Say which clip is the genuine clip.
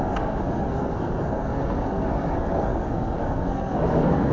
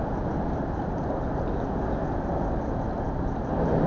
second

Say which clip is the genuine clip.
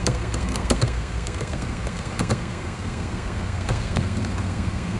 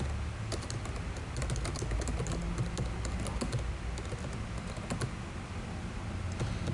second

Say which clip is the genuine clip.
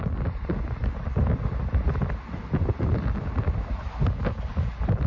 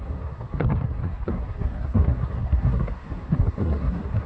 first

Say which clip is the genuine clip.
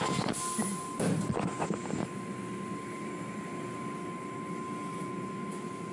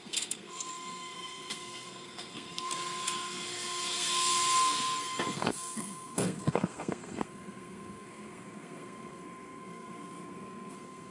first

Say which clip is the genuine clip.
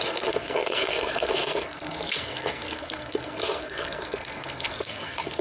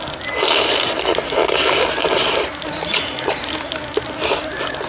second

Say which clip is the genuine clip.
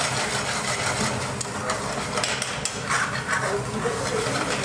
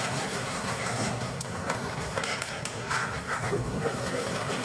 first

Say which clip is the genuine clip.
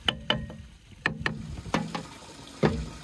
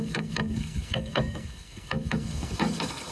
first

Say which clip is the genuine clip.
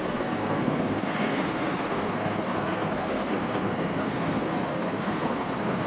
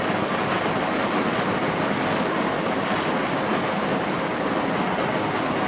second